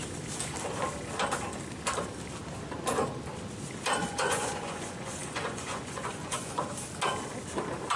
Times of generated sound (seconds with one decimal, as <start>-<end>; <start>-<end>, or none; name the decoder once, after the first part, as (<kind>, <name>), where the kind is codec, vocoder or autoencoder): 4.0-6.6 (vocoder, Vocos)

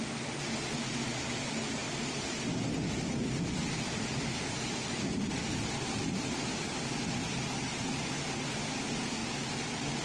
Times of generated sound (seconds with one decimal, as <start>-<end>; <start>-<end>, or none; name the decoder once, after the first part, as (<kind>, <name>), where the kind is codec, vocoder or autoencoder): none

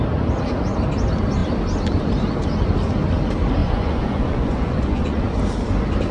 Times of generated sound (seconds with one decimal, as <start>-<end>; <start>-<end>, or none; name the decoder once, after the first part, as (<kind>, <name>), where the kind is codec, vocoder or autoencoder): 3.6-5.2 (vocoder, Vocos)

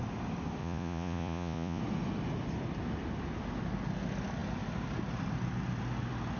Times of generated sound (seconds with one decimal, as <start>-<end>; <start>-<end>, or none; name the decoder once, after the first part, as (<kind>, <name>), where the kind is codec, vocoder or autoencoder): 0.6-1.8 (vocoder, Vocos)